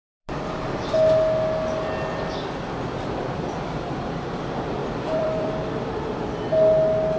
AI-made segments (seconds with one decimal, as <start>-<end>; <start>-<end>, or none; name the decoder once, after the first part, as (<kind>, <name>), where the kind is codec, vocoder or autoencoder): 0.0-0.9 (vocoder, BigVGAN v2); 4.8-6.3